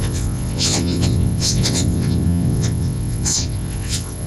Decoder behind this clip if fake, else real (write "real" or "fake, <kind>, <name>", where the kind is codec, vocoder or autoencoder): fake, vocoder, WaveNeXt